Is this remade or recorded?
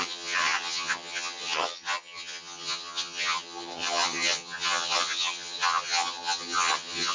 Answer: remade